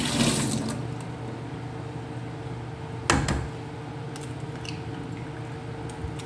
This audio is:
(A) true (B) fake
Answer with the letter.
A